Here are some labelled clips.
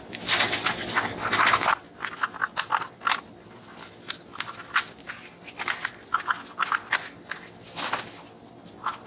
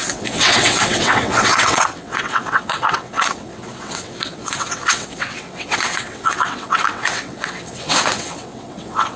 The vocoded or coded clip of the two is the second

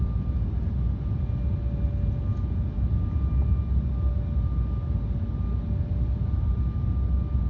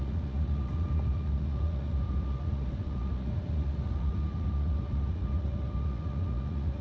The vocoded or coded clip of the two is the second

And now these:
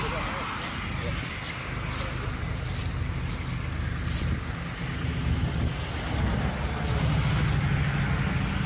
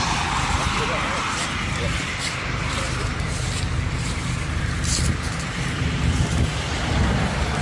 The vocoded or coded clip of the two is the second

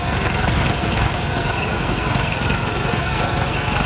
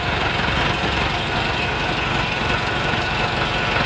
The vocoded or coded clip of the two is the first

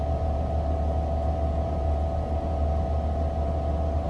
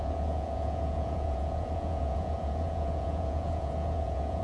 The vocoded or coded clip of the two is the second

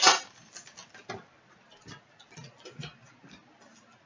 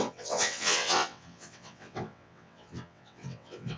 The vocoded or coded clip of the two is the second